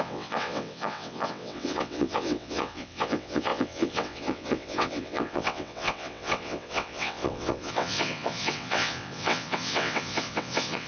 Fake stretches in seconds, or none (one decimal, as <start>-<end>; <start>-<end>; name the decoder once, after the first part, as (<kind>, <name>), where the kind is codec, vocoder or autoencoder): 0.0-10.9 (vocoder, WaveNeXt)